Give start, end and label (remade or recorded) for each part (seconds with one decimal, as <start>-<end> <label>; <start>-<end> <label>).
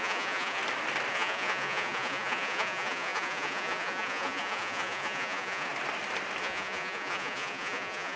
0.0-0.6 remade; 0.6-1.1 recorded; 1.1-5.7 remade; 5.7-6.4 recorded; 6.4-8.2 remade